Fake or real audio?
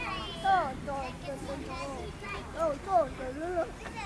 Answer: real